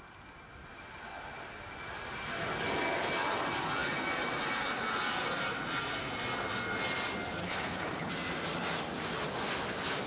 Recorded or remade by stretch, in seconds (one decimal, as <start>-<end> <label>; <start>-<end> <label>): 0.0-7.4 recorded; 7.4-8.1 remade; 8.1-10.1 recorded